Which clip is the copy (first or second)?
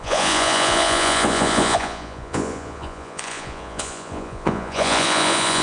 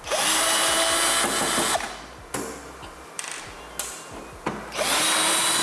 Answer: first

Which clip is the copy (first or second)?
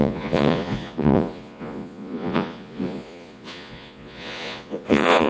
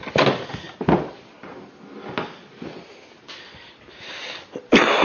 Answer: first